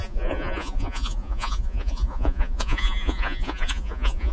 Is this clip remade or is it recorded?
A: remade